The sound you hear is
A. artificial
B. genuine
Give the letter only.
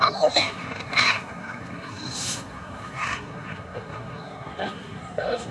A